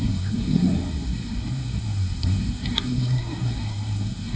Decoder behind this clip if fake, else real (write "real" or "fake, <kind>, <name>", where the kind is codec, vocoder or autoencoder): fake, codec, SNAC